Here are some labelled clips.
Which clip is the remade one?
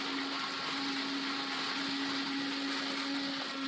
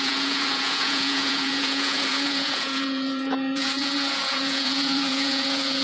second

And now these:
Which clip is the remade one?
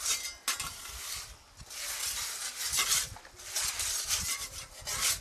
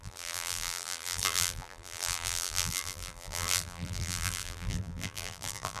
second